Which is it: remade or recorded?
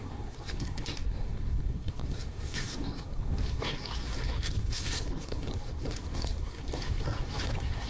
remade